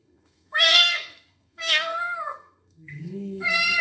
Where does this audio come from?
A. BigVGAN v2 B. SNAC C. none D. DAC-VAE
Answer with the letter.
B